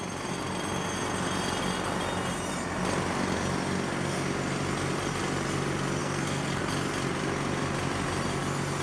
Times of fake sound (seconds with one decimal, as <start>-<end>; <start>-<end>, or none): 6.0-6.6

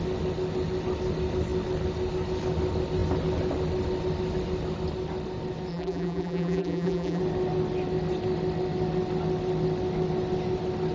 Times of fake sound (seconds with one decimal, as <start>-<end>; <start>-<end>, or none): 5.7-7.2

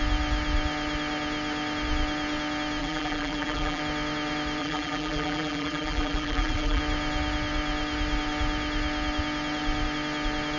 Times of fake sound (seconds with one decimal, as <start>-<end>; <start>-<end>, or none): 2.8-3.8; 4.6-6.8

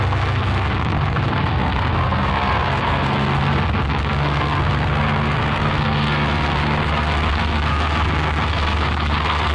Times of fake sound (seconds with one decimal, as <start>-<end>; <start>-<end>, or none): 0.0-9.5

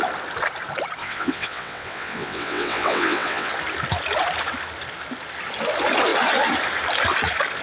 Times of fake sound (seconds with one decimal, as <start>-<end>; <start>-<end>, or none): 1.0-3.5